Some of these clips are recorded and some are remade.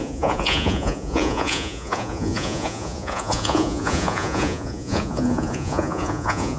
remade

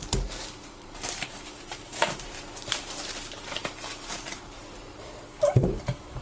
remade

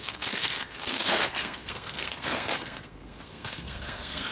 remade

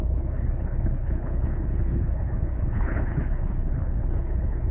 remade